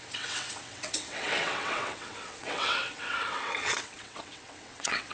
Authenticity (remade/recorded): remade